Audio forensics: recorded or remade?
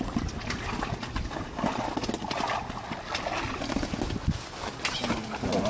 recorded